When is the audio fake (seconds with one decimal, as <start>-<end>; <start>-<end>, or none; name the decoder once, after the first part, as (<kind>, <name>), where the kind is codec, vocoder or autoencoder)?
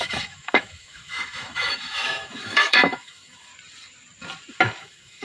0.0-3.5 (autoencoder, DAC-VAE); 4.8-5.2